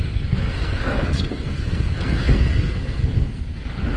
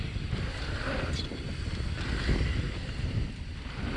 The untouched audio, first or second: second